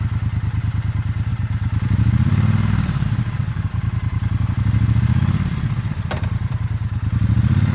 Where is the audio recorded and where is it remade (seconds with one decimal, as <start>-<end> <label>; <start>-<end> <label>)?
0.0-7.7 remade